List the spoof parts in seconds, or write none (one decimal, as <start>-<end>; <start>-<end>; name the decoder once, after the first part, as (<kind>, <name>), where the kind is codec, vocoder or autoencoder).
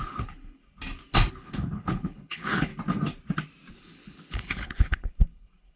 0.0-0.6 (codec, HILCodec); 1.3-2.7; 3.7-5.8